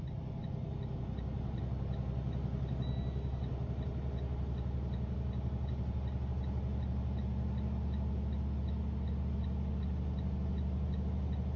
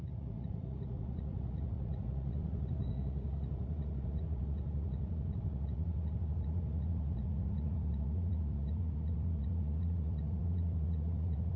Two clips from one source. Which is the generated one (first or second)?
second